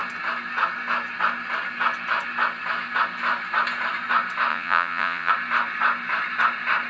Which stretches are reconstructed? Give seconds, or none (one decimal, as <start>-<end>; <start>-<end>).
4.5-5.3